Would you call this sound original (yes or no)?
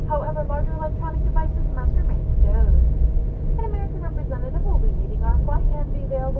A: yes